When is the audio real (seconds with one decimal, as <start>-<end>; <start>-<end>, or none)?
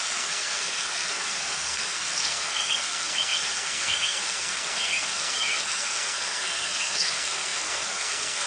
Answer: none